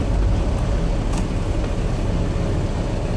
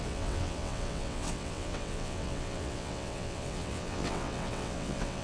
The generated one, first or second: second